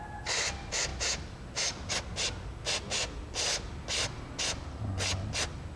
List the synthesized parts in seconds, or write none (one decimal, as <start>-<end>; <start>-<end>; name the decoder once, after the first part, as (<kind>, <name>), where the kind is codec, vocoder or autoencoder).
none